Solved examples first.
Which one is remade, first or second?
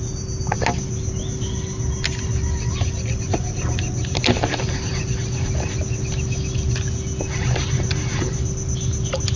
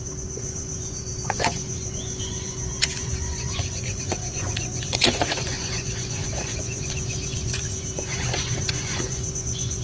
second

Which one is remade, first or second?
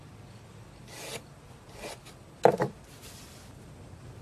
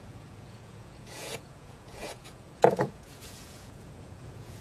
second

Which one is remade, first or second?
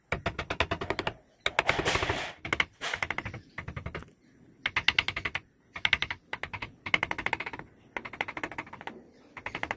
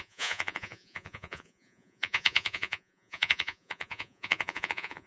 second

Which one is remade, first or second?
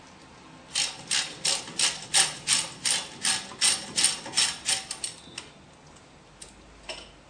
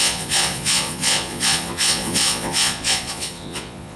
second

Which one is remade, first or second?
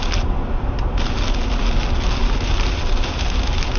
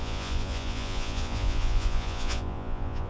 second